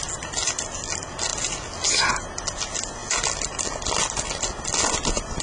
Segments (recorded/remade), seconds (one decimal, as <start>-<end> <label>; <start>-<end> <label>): 0.0-5.4 recorded